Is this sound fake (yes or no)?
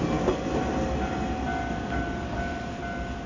no